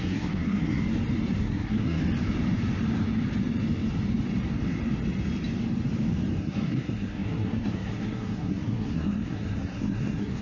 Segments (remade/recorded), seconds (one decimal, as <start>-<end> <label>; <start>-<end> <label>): 0.0-0.8 remade; 0.8-1.4 recorded; 1.4-2.0 remade; 2.0-6.4 recorded; 6.4-10.4 remade